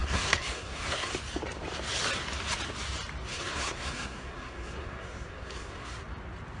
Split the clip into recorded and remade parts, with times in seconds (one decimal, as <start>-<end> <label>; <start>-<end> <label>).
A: 0.0-1.1 remade; 1.1-3.3 recorded; 3.3-6.0 remade; 6.0-6.6 recorded